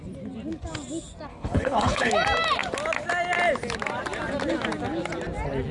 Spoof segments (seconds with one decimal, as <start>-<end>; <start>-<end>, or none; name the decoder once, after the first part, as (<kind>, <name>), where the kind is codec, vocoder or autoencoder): 1.3-2.1 (codec, HILCodec)